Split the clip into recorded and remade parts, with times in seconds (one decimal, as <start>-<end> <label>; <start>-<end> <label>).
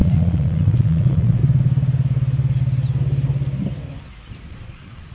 0.0-1.4 remade; 1.4-4.5 recorded; 4.5-5.1 remade